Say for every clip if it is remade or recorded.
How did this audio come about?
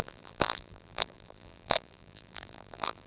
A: remade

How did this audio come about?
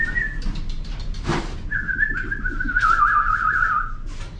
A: recorded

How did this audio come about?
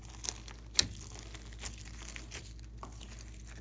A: recorded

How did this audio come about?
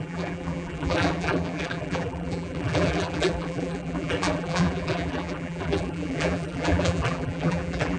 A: remade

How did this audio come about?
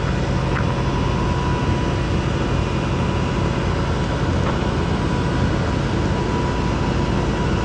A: recorded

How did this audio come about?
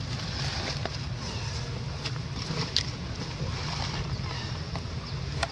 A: recorded